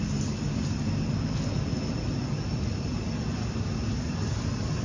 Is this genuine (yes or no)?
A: yes